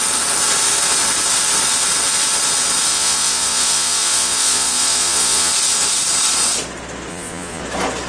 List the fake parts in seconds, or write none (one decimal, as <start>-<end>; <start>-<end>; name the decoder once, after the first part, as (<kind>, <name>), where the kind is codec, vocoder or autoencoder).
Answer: 2.9-5.5 (vocoder, Vocos); 7.1-7.6